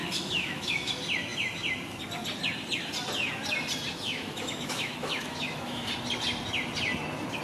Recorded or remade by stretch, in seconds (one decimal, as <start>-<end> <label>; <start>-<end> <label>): 0.0-0.9 remade; 0.9-3.9 recorded; 3.9-5.9 remade; 5.9-7.4 recorded